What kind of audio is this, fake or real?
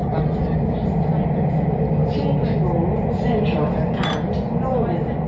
real